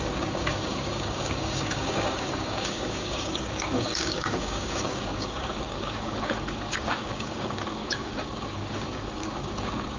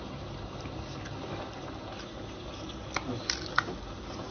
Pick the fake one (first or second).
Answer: first